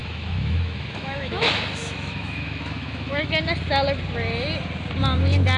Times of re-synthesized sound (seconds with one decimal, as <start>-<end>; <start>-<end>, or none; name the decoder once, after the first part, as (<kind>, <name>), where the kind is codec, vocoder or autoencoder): 0.0-3.4 (autoencoder, DAC-VAE)

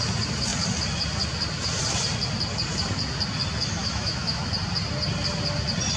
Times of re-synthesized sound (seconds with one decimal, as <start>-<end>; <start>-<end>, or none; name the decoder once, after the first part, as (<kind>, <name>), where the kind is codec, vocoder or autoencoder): 3.8-4.5 (autoencoder, DAC-VAE)

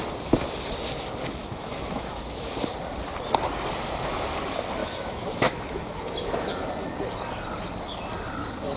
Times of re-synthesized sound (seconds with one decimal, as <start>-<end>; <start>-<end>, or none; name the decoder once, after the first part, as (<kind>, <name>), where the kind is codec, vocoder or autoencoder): 1.4-2.5 (autoencoder, DAC-VAE); 4.8-6.5

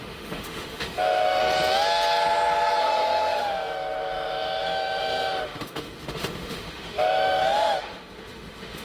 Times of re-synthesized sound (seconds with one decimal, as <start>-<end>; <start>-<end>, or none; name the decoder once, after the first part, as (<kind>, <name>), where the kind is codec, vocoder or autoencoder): 0.0-1.4 (autoencoder, DAC-VAE); 2.8-8.8

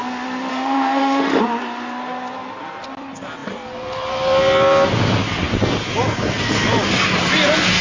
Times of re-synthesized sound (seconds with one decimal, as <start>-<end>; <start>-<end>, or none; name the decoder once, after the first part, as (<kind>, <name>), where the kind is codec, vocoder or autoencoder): 0.5-1.4 (autoencoder, DAC-VAE)

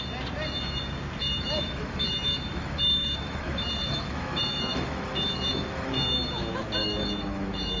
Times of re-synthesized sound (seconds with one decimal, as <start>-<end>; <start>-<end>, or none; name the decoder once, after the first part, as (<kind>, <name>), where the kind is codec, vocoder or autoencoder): 1.2-5.9 (autoencoder, DAC-VAE); 6.8-7.8

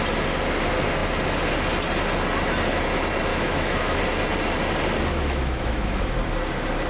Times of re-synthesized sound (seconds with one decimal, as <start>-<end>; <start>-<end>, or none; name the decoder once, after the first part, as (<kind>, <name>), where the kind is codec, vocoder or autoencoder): 3.3-4.0 (autoencoder, DAC-VAE); 5.1-6.1

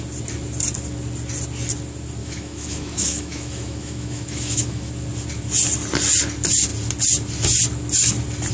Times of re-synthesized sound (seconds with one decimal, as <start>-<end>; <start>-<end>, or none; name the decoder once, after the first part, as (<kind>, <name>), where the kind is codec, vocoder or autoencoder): 2.2-4.9 (autoencoder, DAC-VAE)